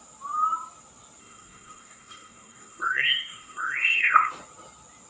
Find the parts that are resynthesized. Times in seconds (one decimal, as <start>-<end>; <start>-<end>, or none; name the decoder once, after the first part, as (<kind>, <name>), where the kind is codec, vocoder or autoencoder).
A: 1.2-4.3 (codec, SNAC)

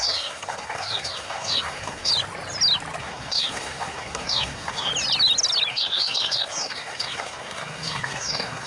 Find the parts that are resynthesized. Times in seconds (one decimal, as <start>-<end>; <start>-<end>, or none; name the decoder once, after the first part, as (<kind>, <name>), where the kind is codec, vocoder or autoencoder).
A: 0.0-2.1 (codec, SNAC); 3.0-4.9; 5.7-8.7

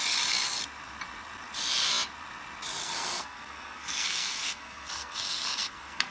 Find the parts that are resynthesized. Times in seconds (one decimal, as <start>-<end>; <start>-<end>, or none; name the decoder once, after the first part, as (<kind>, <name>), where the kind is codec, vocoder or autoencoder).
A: 2.8-6.1 (codec, SNAC)

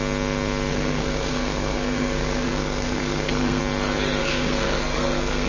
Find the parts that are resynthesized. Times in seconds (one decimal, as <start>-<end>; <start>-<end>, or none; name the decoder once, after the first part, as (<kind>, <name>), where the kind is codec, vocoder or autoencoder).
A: 0.7-3.6 (codec, SNAC); 4.2-5.5

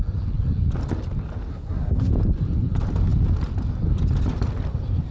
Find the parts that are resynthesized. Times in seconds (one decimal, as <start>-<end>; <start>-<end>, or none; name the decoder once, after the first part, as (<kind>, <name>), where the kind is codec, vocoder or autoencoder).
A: 1.5-2.1 (codec, SNAC)